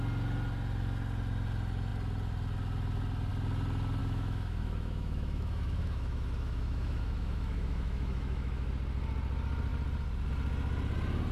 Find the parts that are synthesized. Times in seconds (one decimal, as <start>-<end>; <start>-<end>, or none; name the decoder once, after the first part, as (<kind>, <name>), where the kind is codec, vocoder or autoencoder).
4.0-8.7 (autoencoder, DAC-VAE)

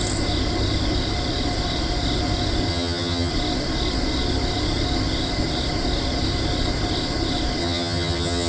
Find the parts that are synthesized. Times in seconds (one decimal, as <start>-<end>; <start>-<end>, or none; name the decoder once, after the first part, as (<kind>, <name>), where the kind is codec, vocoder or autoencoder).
2.7-3.3 (vocoder, HiFi-GAN); 7.6-8.5

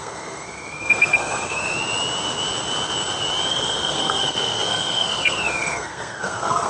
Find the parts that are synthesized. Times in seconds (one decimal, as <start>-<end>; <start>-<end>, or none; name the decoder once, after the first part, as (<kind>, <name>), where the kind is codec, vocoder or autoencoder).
0.0-1.7 (codec, SNAC); 3.5-6.7

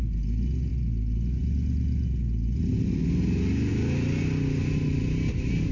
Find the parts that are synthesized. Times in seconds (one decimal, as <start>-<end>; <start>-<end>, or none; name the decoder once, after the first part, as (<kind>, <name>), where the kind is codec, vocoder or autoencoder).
none

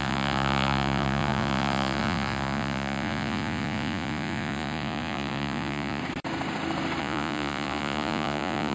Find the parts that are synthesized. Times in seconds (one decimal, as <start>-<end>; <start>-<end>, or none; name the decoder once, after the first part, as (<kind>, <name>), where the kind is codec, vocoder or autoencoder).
0.0-6.0 (vocoder, Vocos); 7.0-8.7